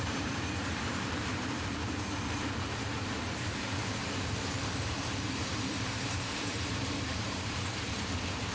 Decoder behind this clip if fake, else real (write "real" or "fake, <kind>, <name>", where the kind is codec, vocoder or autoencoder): fake, vocoder, BigVGAN v2